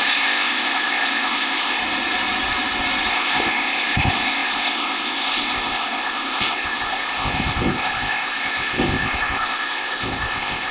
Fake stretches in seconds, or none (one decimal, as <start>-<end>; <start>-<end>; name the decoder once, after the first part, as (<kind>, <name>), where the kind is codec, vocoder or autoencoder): 0.0-1.8 (codec, ZipCodec); 3.1-10.7